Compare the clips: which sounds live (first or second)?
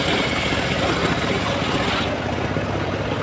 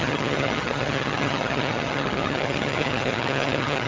first